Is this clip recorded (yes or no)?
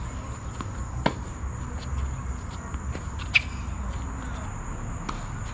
yes